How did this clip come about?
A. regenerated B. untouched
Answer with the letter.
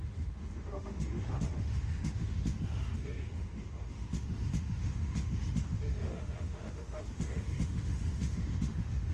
A